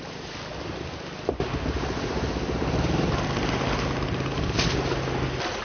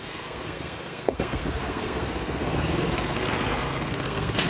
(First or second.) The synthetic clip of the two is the second